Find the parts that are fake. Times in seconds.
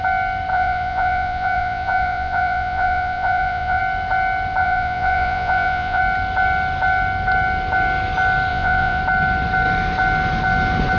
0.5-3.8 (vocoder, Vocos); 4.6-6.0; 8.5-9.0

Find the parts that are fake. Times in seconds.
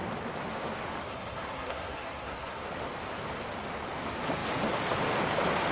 1.1-2.6 (codec, SNAC)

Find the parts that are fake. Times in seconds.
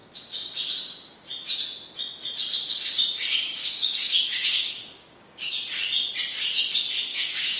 0.0-0.7 (codec, DAC); 3.6-5.5; 7.1-7.6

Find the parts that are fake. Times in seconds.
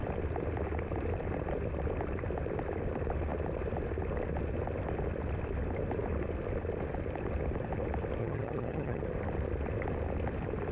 8.2-9.0 (vocoder, HiFi-GAN)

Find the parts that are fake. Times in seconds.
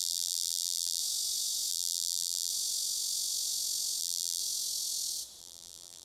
0.0-1.0 (vocoder, BigVGAN v2); 1.7-2.5; 4.0-4.4; 5.4-6.0